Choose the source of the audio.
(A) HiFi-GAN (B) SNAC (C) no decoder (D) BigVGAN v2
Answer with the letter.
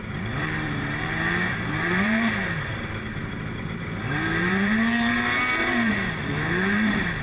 D